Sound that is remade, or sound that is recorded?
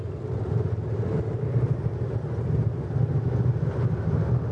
recorded